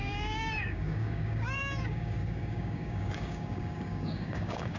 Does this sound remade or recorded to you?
remade